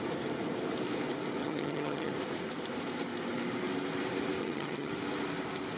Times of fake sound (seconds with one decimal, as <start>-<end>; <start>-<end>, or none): 1.4-2.1; 4.4-4.9